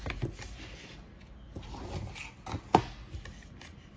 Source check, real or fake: real